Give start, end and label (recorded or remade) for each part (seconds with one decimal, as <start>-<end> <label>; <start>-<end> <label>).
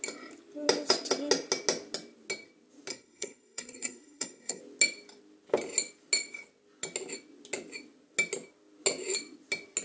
0.0-2.9 recorded; 2.9-4.6 remade; 4.6-9.8 recorded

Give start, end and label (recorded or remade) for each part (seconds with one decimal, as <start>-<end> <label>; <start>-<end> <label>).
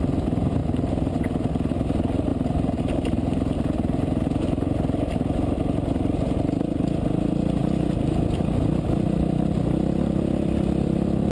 0.0-11.3 recorded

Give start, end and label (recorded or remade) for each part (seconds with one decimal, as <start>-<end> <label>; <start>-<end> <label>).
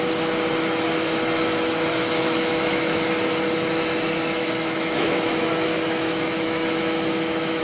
0.0-2.2 recorded; 2.2-3.1 remade; 3.1-4.4 recorded; 4.4-7.6 remade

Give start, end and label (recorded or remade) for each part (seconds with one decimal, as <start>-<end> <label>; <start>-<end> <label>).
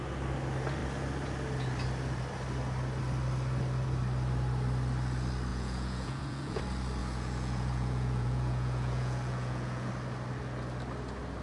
0.0-5.5 recorded; 5.5-6.6 remade; 6.6-7.0 recorded; 7.0-9.9 remade; 9.9-11.4 recorded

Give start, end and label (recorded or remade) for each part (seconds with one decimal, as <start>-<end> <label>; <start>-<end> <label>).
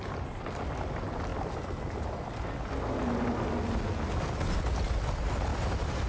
0.0-6.1 recorded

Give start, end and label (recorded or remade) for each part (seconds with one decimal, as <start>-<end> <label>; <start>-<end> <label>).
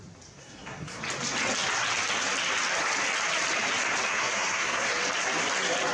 0.0-0.4 recorded; 0.4-1.0 remade; 1.0-4.1 recorded; 4.1-4.9 remade; 4.9-5.9 recorded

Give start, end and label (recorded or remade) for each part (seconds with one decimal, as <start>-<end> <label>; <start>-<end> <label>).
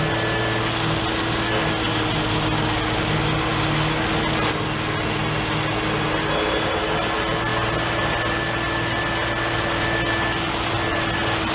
0.0-11.5 recorded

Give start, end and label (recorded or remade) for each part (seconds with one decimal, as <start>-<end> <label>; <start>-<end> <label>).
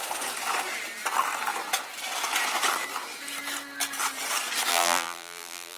0.0-4.7 recorded; 4.7-5.8 remade